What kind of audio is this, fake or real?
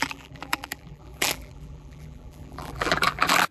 fake